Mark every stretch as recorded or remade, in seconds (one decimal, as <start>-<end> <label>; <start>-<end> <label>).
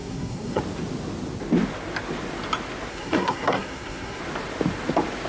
0.0-0.6 remade; 0.6-2.9 recorded; 2.9-4.2 remade; 4.2-5.3 recorded